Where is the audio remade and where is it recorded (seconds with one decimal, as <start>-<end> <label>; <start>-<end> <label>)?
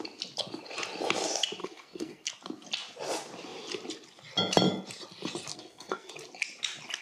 0.0-1.6 recorded; 1.6-2.3 remade; 2.3-5.5 recorded; 5.5-6.1 remade; 6.1-7.0 recorded